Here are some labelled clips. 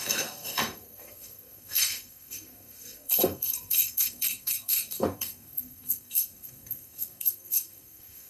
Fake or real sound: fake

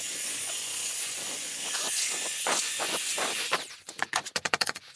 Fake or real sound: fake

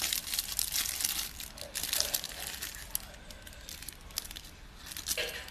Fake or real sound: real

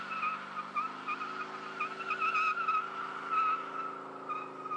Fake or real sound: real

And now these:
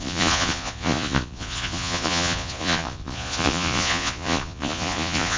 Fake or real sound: fake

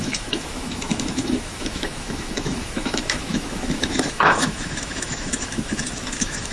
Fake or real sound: fake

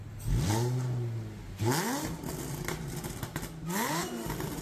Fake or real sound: real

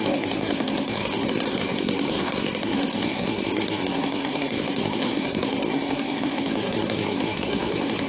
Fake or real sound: fake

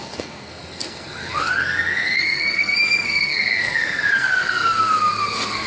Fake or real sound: fake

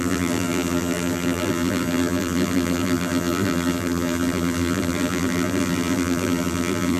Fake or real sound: fake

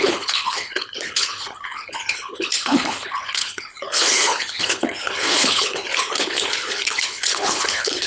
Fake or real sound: fake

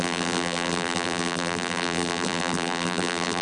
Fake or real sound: fake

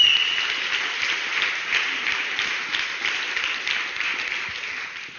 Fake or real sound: real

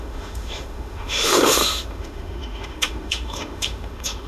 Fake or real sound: fake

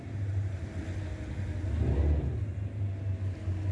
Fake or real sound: real